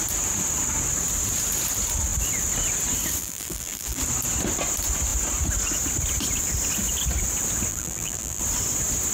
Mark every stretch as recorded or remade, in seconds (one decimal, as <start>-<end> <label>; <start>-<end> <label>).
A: 0.0-3.2 recorded; 3.2-4.0 remade; 4.0-7.7 recorded; 7.7-8.4 remade; 8.4-9.1 recorded